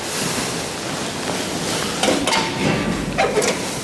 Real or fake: real